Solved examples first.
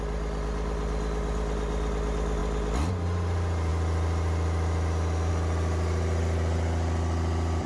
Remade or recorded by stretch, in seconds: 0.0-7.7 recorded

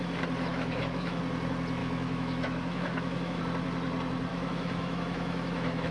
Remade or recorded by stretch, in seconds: 0.0-0.5 recorded; 0.5-1.2 remade; 1.2-1.8 recorded; 1.8-3.4 remade; 3.4-4.3 recorded; 4.3-5.9 remade

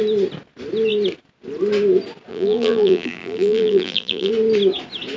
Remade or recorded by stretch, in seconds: 0.0-2.3 recorded; 2.3-4.3 remade; 4.3-5.2 recorded